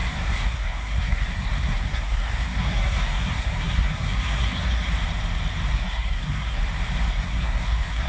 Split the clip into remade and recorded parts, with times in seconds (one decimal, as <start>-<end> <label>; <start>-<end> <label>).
0.0-4.9 remade; 4.9-5.7 recorded; 5.7-6.6 remade; 6.6-7.1 recorded; 7.1-8.1 remade